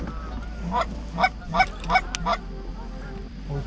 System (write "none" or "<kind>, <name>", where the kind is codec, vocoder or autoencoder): none